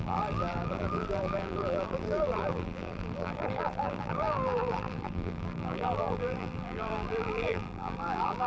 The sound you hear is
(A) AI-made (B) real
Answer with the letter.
A